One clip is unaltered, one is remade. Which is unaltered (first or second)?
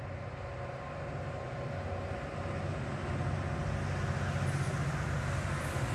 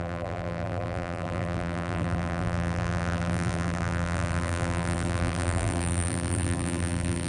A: first